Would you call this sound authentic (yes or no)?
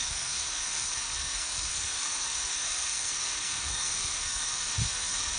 no